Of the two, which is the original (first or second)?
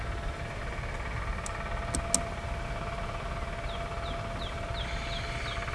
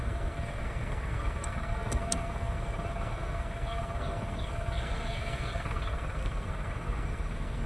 first